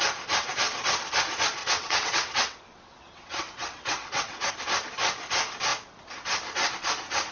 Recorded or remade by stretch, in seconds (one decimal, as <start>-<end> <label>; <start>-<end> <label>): 0.0-1.6 recorded; 1.6-4.5 remade; 4.5-7.3 recorded